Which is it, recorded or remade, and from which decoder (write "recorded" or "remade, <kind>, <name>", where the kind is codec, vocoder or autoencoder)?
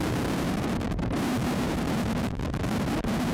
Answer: remade, vocoder, BigVGAN v2